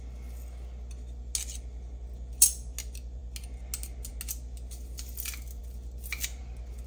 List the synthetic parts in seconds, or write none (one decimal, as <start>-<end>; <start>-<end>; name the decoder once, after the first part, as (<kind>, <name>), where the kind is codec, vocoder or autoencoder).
none